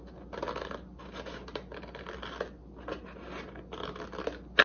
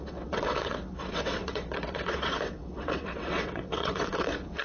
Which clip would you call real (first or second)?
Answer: first